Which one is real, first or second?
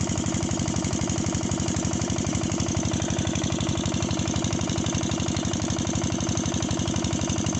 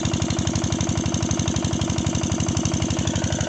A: second